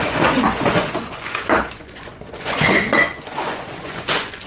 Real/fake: fake